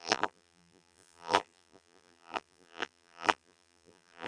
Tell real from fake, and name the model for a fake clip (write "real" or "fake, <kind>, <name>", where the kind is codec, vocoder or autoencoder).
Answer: fake, vocoder, BigVGAN v2